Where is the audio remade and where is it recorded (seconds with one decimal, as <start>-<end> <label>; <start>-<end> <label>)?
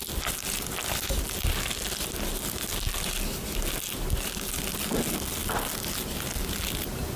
0.0-7.2 recorded